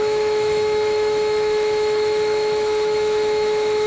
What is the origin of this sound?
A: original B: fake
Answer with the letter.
B